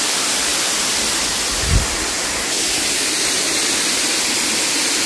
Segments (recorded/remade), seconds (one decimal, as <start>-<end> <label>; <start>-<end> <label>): 0.0-5.1 recorded